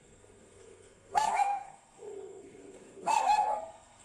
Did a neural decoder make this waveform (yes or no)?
yes